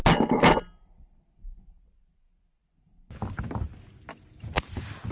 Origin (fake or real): real